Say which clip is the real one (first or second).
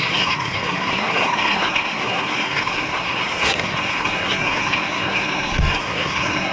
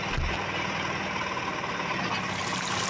second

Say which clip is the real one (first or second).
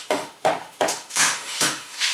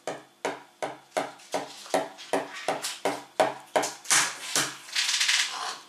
second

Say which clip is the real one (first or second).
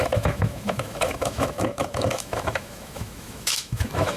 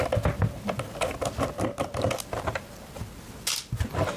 second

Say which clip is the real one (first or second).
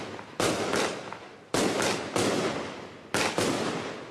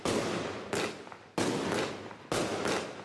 second